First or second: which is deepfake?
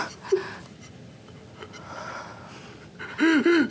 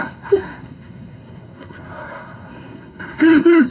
second